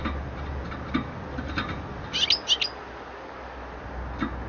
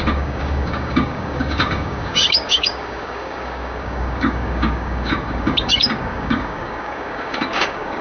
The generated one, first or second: second